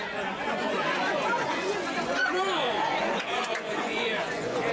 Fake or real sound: fake